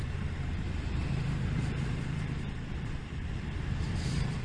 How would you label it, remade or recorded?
remade